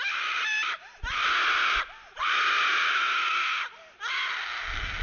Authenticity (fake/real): real